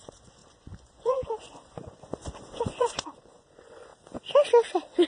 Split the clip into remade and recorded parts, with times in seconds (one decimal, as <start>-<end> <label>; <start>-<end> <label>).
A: 0.0-3.9 remade; 3.9-5.1 recorded